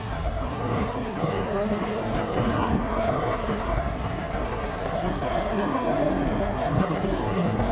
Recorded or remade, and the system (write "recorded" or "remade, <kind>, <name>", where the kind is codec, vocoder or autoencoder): remade, codec, SNAC